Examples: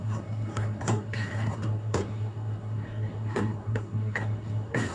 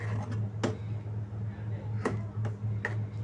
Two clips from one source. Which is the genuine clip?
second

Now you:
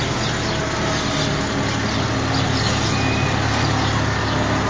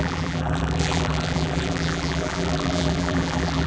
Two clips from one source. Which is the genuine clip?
first